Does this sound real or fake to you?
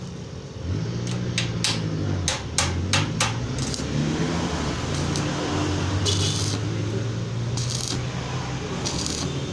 real